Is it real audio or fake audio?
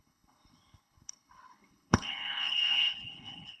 fake